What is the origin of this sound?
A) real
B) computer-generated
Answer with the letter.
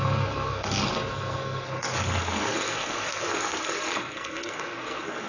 B